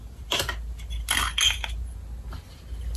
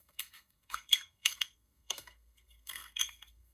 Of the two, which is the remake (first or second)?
second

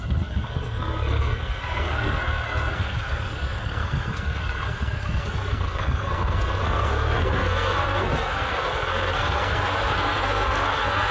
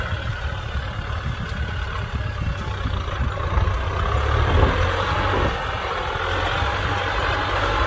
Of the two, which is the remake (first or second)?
first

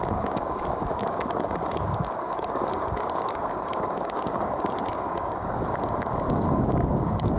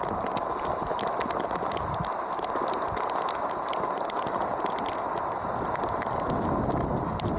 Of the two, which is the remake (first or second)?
first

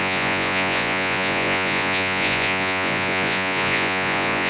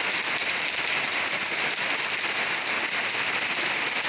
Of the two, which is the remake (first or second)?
first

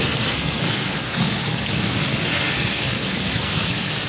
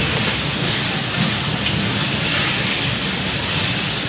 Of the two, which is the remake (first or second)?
first